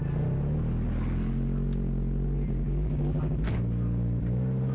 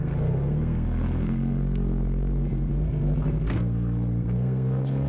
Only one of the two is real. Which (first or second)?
first